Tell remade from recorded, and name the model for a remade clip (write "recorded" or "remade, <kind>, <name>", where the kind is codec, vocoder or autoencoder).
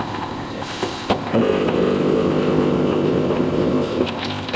remade, codec, ZipCodec